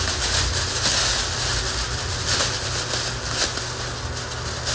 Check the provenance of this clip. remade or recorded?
recorded